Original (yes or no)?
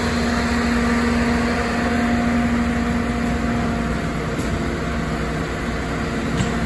yes